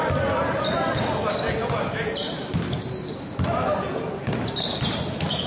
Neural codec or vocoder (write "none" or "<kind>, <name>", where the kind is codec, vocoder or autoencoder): none